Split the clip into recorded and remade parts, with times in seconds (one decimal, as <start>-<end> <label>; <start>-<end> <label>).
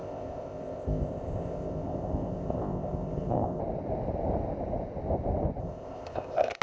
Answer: 0.0-3.6 remade; 3.6-5.6 recorded; 5.6-6.6 remade